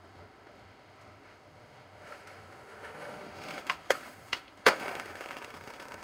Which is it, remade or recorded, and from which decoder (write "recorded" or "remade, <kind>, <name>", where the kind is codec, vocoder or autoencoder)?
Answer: remade, autoencoder, DAC-VAE